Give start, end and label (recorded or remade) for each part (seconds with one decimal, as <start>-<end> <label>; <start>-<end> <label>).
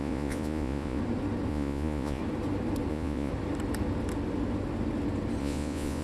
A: 0.0-1.0 remade; 1.0-1.5 recorded; 1.5-2.2 remade; 2.2-2.9 recorded; 2.9-3.3 remade; 3.3-5.4 recorded; 5.4-6.0 remade